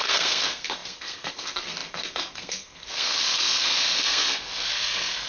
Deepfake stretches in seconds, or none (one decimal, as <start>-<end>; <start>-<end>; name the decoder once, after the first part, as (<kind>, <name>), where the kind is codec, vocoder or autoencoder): 0.0-5.3 (codec, SNAC)